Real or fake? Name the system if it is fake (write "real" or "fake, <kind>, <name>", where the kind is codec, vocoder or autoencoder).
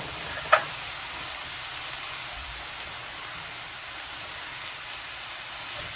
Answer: real